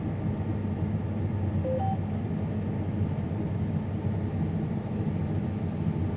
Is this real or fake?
real